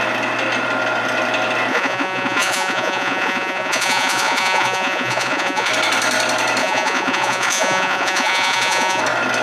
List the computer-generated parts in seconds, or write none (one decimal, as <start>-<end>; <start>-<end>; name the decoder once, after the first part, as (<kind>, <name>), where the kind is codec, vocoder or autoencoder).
1.7-5.7 (vocoder, Vocos); 6.6-9.0